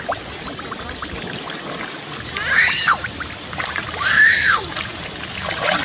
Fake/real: real